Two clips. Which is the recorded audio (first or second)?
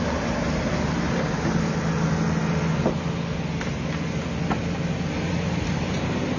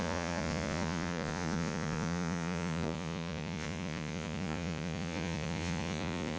first